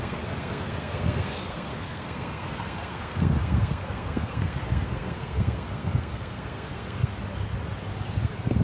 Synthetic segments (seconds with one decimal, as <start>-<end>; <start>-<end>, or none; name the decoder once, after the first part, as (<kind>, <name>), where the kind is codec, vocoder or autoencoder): 0.0-7.1 (codec, SNAC); 8.2-8.6